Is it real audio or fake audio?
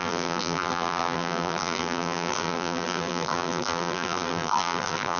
fake